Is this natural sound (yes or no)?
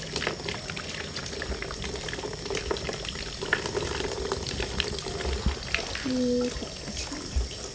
yes